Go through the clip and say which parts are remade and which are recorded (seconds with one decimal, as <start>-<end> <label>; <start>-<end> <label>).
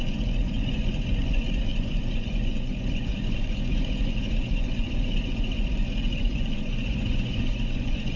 0.0-8.2 remade